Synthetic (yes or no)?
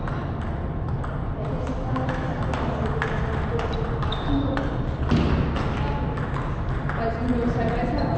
no